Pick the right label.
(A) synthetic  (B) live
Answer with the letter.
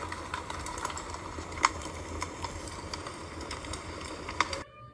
B